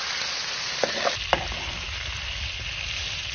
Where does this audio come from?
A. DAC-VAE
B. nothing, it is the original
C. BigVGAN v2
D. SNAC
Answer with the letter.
B